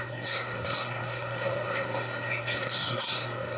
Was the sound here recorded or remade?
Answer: remade